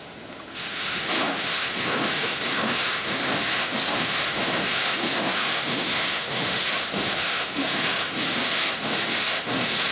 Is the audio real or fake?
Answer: fake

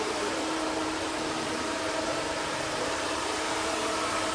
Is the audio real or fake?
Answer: fake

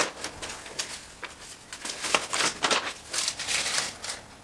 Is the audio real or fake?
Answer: real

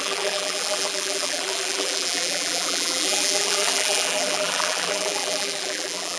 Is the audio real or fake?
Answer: fake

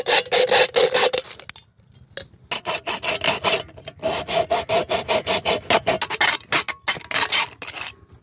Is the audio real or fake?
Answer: real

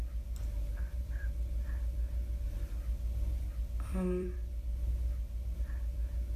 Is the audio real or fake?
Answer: fake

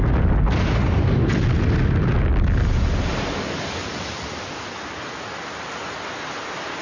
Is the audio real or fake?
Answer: real